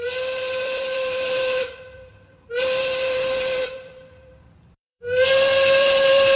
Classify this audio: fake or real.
fake